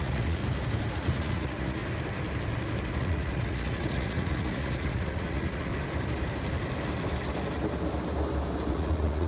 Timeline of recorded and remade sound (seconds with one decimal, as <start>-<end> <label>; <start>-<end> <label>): 0.0-0.4 remade; 0.4-0.9 recorded; 0.9-1.8 remade; 1.8-3.0 recorded; 3.0-5.7 remade; 5.7-8.7 recorded; 8.7-9.3 remade